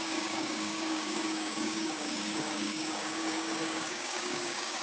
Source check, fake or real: fake